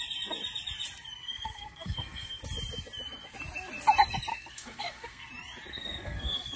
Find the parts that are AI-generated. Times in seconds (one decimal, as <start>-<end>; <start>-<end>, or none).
1.2-2.4; 4.3-5.3; 5.7-6.6